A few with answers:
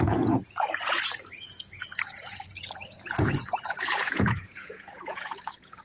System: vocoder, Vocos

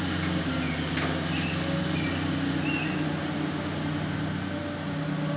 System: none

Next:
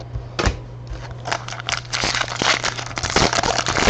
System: none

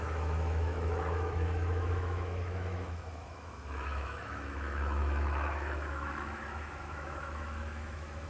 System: autoencoder, DAC-VAE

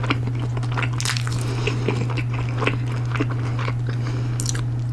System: none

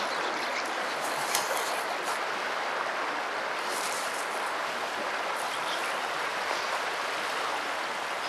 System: none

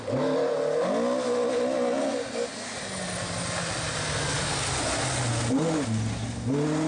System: none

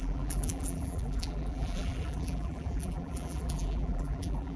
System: vocoder, BigVGAN v2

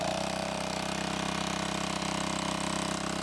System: none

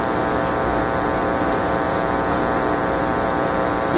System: vocoder, BigVGAN v2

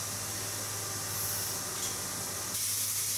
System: none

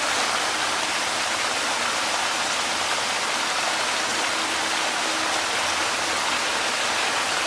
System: none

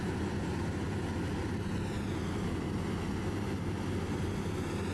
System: none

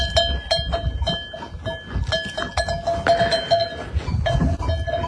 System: none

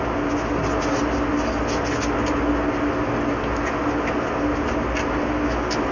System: none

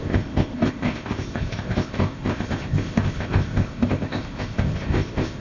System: codec, ZipCodec